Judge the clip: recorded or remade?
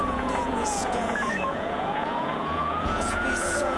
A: remade